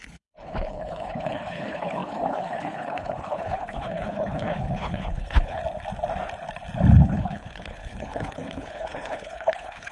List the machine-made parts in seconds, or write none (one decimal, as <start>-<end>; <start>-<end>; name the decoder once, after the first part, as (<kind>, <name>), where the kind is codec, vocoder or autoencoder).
0.0-5.6 (codec, HILCodec); 7.1-9.9